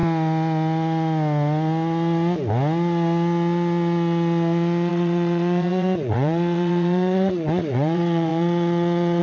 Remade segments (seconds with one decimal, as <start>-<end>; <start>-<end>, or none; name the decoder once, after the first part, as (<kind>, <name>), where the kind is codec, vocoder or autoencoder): 4.9-9.2 (vocoder, WaveNeXt)